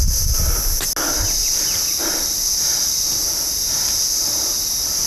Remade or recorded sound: recorded